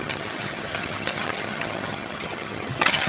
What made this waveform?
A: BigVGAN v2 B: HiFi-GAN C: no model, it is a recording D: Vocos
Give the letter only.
B